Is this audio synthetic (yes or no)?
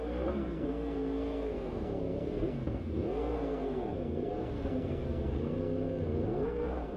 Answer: yes